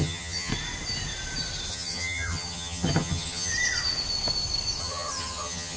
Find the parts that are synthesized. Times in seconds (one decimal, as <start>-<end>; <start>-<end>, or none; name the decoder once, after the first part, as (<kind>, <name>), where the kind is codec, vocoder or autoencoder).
0.0-0.5 (vocoder, HiFi-GAN); 1.7-3.5; 4.8-5.8